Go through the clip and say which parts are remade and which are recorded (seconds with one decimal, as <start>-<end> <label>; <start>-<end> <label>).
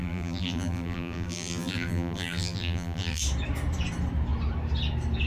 0.0-3.2 remade; 3.2-5.3 recorded